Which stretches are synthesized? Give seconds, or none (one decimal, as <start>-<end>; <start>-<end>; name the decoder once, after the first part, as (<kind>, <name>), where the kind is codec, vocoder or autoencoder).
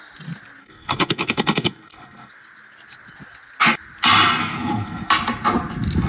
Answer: 0.6-2.3 (codec, SNAC); 4.4-5.1